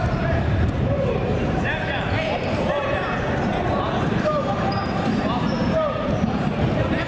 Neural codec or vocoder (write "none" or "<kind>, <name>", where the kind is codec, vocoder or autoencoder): vocoder, BigVGAN v2